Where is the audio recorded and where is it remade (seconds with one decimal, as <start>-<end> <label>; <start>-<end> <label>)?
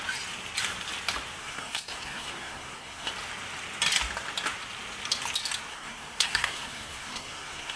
0.0-1.4 recorded; 1.4-3.1 remade; 3.1-5.7 recorded; 5.7-7.8 remade